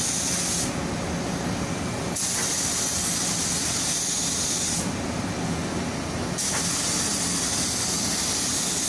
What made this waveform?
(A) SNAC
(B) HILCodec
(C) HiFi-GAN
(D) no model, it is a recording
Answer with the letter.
D